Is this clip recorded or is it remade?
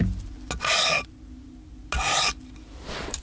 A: recorded